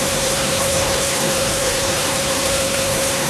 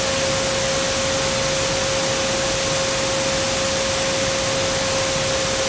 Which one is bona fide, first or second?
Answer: second